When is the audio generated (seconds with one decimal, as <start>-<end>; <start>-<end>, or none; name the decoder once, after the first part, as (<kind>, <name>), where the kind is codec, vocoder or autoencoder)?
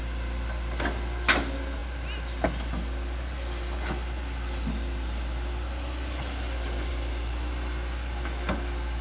none